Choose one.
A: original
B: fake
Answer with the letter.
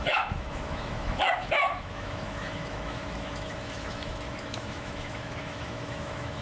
B